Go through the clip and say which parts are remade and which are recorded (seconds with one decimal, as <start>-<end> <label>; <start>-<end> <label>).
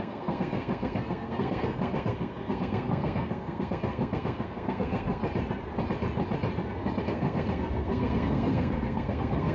0.0-5.2 remade; 5.2-7.0 recorded; 7.0-9.5 remade